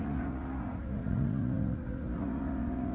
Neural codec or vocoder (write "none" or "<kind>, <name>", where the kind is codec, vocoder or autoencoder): vocoder, Vocos